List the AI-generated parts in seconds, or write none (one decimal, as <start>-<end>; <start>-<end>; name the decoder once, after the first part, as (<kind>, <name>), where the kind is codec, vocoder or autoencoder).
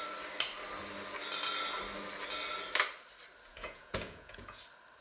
3.5-4.6 (vocoder, Vocos)